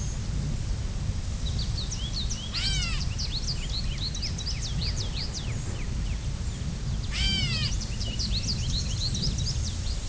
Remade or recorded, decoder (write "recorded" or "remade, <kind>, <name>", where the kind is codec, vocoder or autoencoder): recorded